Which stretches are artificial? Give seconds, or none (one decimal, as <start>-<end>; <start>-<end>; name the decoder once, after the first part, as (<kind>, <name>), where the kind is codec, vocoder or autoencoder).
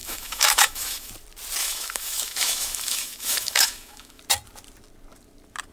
0.0-1.1 (autoencoder, DAC-VAE); 1.6-4.2